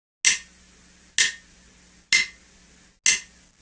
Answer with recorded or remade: recorded